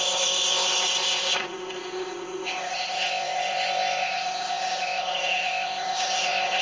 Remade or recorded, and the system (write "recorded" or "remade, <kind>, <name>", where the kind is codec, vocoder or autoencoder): remade, codec, ZipCodec